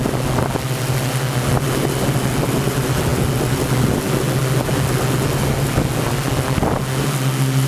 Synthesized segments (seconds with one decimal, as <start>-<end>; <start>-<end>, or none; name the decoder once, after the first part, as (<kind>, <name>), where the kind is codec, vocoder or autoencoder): none